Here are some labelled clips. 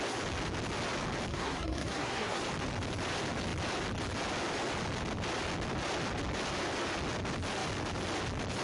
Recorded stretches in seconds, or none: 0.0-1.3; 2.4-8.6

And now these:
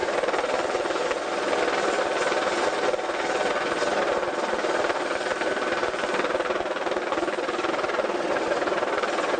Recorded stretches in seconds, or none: 0.0-9.4